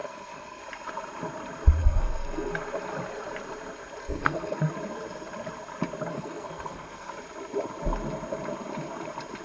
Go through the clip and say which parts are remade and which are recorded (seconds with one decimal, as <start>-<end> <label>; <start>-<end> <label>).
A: 0.0-0.6 remade; 0.6-1.8 recorded; 1.8-2.5 remade; 2.5-4.0 recorded; 4.0-4.7 remade; 4.7-6.1 recorded; 6.1-7.1 remade; 7.1-9.4 recorded